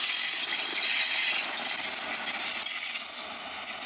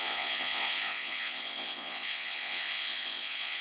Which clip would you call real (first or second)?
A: first